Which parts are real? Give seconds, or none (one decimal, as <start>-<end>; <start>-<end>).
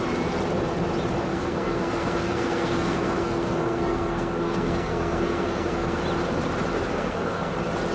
0.0-1.3; 6.0-6.9; 7.5-7.9